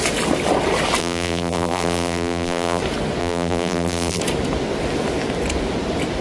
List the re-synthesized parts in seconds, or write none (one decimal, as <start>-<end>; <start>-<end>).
1.0-2.8; 3.2-4.2